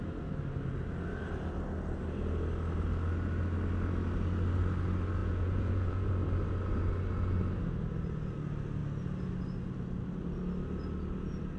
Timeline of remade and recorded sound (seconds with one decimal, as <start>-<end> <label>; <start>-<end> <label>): 0.0-5.2 recorded; 5.2-6.1 remade; 6.1-11.6 recorded